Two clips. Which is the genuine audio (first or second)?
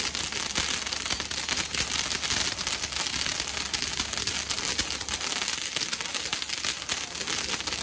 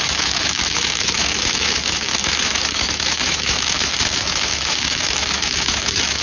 first